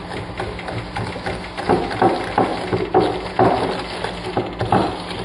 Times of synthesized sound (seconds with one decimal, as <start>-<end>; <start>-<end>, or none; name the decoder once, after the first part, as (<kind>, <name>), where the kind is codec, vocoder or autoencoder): none